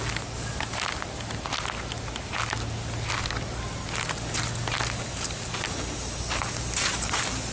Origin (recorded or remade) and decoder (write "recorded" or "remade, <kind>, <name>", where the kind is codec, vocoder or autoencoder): recorded